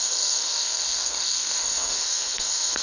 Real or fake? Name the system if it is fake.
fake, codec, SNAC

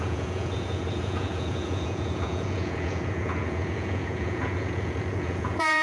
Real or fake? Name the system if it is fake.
fake, vocoder, Vocos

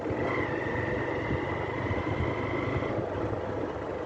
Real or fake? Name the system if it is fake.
fake, vocoder, BigVGAN v2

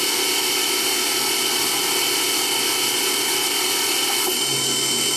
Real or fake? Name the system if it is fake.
real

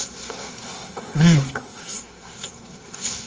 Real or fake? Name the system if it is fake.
fake, codec, SNAC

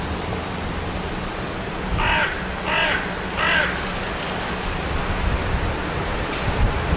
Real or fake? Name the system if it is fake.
real